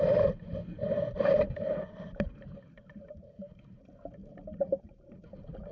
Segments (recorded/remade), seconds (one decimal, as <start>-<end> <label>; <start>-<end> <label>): 0.0-4.2 remade; 4.2-4.8 recorded; 4.8-5.7 remade